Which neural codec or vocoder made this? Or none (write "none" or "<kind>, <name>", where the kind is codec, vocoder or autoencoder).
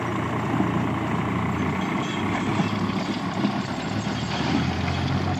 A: none